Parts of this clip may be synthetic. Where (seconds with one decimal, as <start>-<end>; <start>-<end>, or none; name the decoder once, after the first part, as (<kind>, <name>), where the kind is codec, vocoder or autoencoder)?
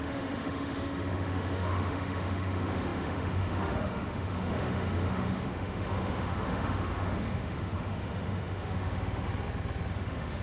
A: 0.0-9.3 (autoencoder, DAC-VAE); 9.9-10.4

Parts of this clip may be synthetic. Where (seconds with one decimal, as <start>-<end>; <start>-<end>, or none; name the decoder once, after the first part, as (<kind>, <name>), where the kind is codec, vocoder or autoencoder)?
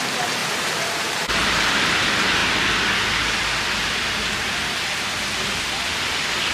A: 0.4-1.7 (vocoder, BigVGAN v2)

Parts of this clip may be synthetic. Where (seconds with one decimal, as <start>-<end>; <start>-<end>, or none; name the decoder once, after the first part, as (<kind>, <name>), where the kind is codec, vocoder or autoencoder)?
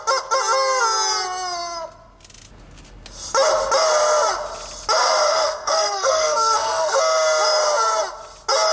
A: 5.3-7.0 (codec, SNAC)